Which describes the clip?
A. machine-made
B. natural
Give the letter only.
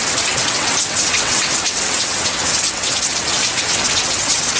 A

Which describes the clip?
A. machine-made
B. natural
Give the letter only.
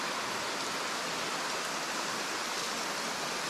B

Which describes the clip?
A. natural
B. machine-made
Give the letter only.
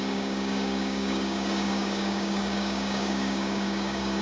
B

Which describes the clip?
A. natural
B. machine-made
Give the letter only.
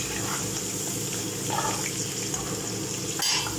A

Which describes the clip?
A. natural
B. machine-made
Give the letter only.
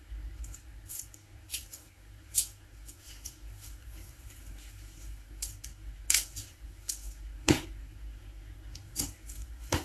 B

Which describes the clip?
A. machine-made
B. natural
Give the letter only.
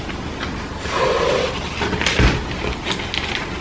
B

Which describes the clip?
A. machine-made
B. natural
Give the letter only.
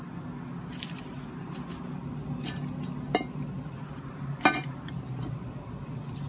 B